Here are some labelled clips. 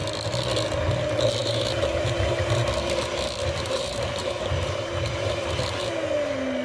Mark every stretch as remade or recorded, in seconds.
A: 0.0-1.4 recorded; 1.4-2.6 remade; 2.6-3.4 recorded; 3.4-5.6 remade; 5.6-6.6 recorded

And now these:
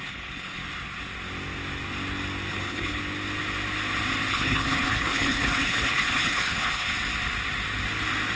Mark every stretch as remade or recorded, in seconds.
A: 0.0-0.6 remade; 0.6-2.5 recorded; 2.5-3.0 remade; 3.0-4.3 recorded; 4.3-6.9 remade; 6.9-8.4 recorded

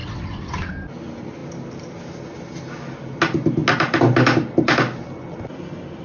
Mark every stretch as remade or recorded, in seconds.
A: 0.0-0.7 remade; 0.7-6.0 recorded

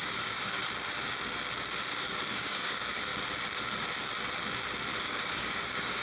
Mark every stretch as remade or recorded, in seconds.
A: 0.0-0.6 remade; 0.6-1.9 recorded; 1.9-3.1 remade; 3.1-5.0 recorded; 5.0-6.0 remade

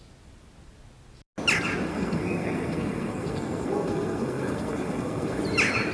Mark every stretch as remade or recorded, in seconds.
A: 0.0-1.9 recorded; 1.9-5.4 remade; 5.4-5.9 recorded

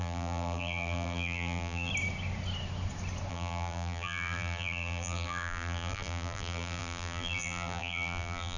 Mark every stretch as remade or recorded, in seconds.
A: 0.0-1.9 remade; 1.9-3.3 recorded; 3.3-8.6 remade

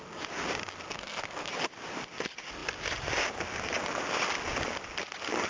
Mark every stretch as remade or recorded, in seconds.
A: 0.0-0.9 recorded; 0.9-1.5 remade; 1.5-5.5 recorded